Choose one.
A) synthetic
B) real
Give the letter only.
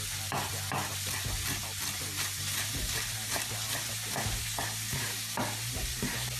B